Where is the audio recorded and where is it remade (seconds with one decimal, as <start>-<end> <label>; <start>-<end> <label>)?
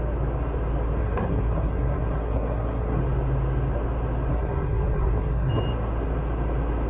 0.0-1.0 recorded; 1.0-3.0 remade; 3.0-4.3 recorded; 4.3-5.5 remade; 5.5-6.9 recorded